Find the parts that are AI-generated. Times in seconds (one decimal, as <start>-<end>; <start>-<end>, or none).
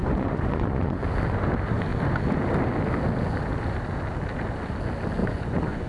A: 0.0-1.0; 5.2-5.9